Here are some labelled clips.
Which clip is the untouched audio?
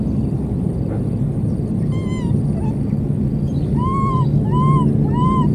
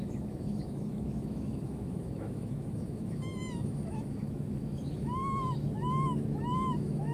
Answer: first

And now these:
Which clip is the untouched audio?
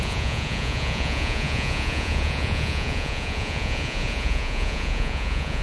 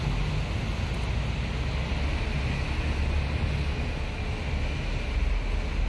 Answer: second